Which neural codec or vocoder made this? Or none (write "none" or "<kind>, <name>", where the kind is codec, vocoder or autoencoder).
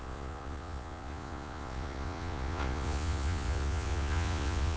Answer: vocoder, Vocos